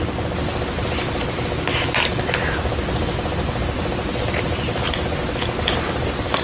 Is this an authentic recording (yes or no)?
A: yes